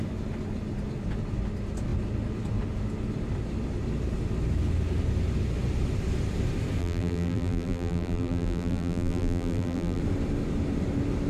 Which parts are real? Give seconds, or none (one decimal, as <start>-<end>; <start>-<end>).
0.0-6.8; 10.0-11.3